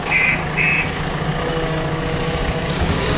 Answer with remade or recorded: remade